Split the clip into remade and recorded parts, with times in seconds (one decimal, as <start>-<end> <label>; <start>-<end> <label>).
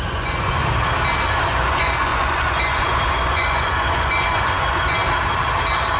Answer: 0.0-0.6 remade; 0.6-1.4 recorded; 1.4-5.0 remade; 5.0-6.0 recorded